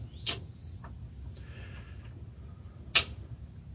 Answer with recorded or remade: recorded